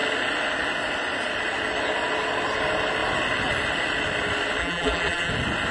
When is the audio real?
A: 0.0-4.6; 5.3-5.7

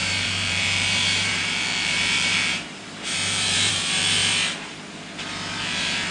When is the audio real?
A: 4.2-5.6

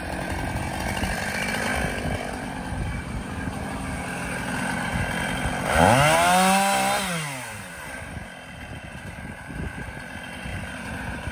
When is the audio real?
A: 0.0-10.5

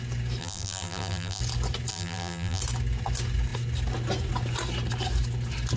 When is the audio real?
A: 0.0-0.4; 1.4-1.9; 2.6-5.8

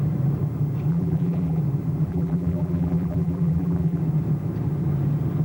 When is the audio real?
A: 0.0-0.9; 1.6-2.1; 4.0-5.4

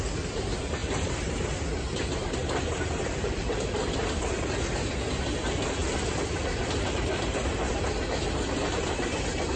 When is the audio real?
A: 0.0-0.8; 1.3-2.2; 3.8-5.8; 7.5-9.6

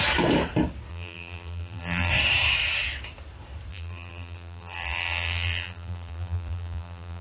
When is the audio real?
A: 0.0-0.9; 2.1-3.7

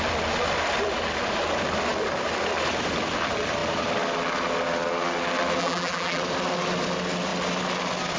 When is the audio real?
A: 0.0-5.6; 6.2-8.2